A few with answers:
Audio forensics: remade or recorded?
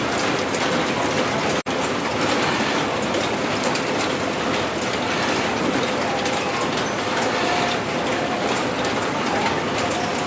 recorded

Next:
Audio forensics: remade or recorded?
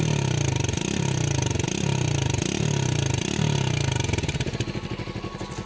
recorded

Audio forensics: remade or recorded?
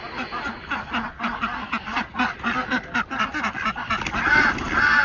recorded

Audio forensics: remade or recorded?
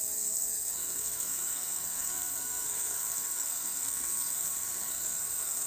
remade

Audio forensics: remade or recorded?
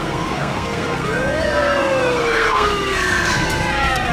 remade